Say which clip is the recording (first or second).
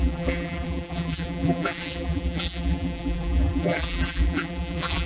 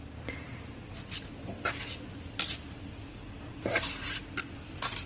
second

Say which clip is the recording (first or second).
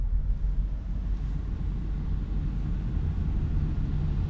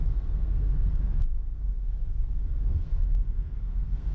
first